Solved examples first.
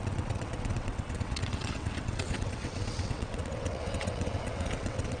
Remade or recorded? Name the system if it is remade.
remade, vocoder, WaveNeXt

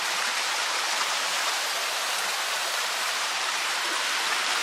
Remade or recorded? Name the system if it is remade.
remade, vocoder, BigVGAN v2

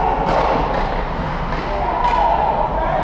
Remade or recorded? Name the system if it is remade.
recorded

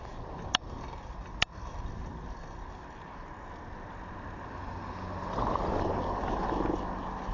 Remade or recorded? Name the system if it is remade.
recorded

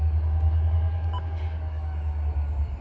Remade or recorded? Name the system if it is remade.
remade, codec, DAC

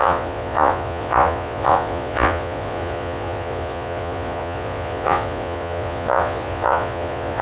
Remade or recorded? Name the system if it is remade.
remade, vocoder, Vocos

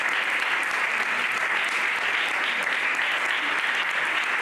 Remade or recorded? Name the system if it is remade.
recorded